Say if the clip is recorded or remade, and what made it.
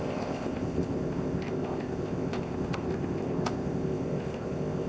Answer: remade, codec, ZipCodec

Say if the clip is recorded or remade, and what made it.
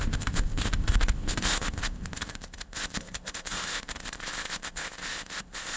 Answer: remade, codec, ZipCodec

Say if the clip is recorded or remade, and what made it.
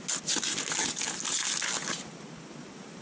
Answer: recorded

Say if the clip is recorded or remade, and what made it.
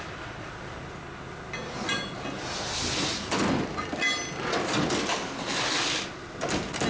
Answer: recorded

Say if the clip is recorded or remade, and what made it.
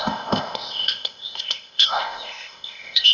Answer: remade, codec, ZipCodec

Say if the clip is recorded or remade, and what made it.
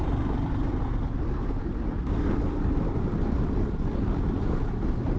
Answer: recorded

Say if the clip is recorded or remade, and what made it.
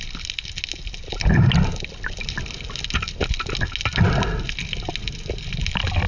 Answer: recorded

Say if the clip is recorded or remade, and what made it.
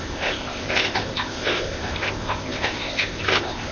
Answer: remade, codec, ZipCodec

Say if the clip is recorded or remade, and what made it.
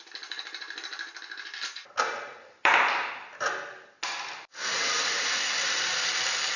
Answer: recorded